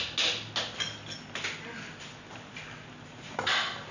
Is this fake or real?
real